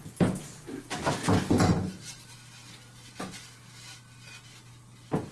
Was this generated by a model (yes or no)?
no